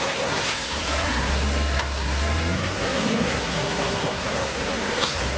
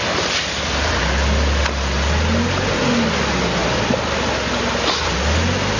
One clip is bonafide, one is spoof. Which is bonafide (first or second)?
second